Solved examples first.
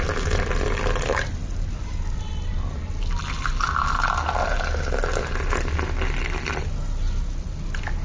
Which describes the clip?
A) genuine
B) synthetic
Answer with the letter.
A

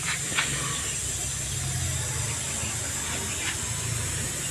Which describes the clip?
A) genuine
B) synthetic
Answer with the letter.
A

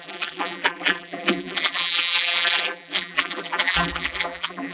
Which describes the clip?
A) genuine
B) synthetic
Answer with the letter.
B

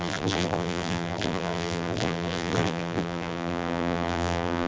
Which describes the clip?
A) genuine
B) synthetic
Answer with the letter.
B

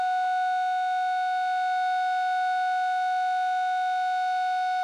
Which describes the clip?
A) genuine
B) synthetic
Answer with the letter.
A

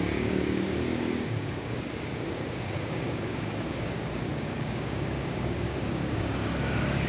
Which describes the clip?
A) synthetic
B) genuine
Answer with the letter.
A